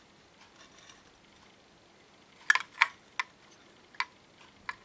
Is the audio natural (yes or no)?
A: yes